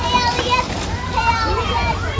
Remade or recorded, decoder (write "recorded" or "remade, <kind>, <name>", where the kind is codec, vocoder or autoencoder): recorded